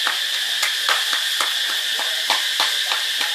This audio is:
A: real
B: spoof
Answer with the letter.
A